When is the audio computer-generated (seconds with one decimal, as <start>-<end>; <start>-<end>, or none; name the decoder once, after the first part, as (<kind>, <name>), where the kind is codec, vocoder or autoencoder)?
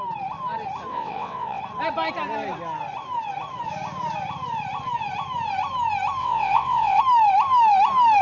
0.9-1.6 (vocoder, WaveNeXt); 6.2-7.0